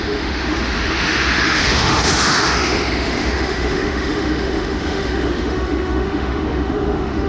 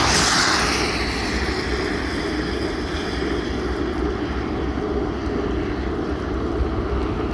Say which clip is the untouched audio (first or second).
second